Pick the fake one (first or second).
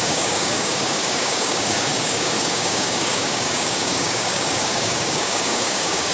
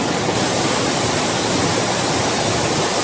first